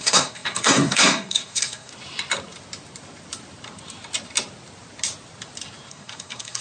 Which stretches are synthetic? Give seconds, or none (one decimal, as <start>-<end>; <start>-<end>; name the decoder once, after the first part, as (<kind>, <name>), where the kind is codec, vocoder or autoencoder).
0.0-1.9 (codec, SNAC); 5.9-6.6